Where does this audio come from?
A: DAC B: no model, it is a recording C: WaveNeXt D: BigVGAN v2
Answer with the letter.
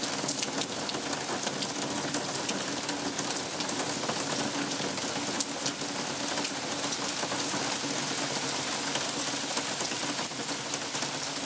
B